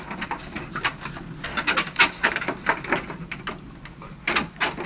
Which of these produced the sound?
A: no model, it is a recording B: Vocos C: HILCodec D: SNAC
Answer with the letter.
A